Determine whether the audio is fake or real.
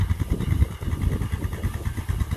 real